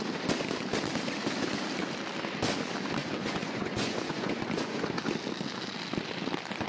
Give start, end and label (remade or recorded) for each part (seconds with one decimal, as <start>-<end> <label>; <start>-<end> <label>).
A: 0.0-3.0 recorded; 3.0-4.8 remade; 4.8-6.7 recorded